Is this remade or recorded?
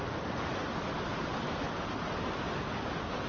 recorded